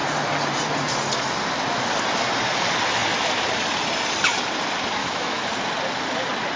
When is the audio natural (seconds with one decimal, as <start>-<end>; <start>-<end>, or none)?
0.0-5.0; 5.5-6.6

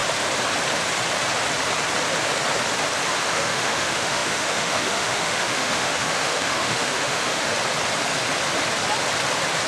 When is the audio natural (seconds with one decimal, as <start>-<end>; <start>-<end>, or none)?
0.0-3.2; 7.5-9.7

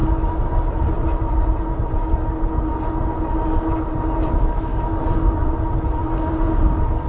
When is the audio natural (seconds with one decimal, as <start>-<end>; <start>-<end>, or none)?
0.0-4.3; 4.7-7.1

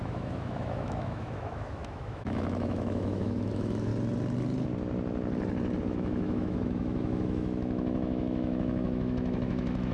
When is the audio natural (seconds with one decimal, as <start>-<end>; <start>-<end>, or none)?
3.9-5.8

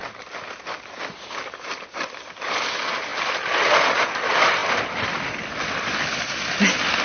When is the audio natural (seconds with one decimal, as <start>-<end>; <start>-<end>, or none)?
0.0-7.0

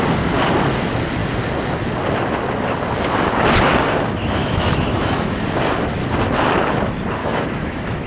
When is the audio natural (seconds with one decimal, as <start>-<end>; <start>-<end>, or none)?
0.0-4.4; 5.4-7.2

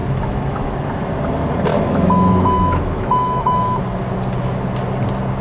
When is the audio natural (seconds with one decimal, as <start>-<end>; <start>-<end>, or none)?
0.7-1.7; 3.8-5.4